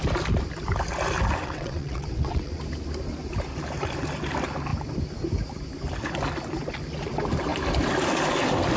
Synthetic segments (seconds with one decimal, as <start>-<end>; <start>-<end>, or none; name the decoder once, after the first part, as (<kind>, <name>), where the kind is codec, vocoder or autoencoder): 1.4-2.6 (vocoder, WaveNeXt)